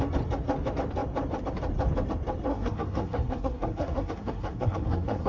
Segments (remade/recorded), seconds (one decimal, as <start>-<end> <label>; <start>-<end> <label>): 0.0-2.5 recorded; 2.5-5.3 remade